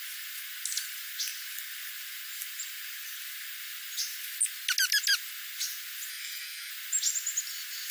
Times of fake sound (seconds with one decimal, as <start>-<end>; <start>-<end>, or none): 6.1-6.7